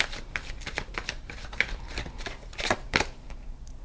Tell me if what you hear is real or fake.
fake